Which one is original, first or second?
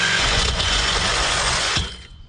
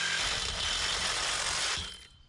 second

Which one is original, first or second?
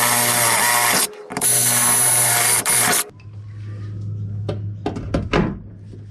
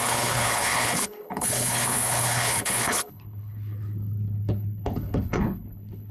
first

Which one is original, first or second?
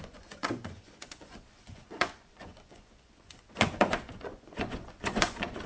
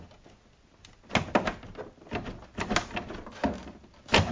second